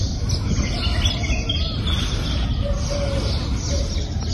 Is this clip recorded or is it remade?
recorded